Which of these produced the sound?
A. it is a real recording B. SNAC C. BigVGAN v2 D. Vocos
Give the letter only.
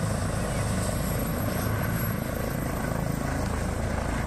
A